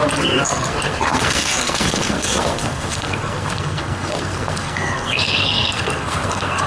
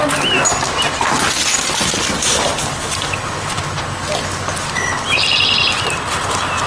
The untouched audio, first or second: second